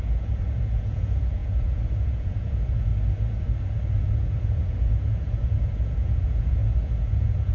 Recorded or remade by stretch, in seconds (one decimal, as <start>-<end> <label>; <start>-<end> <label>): 0.0-2.9 remade; 2.9-4.0 recorded; 4.0-7.5 remade